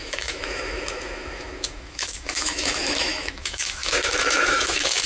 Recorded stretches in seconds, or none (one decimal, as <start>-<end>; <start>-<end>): none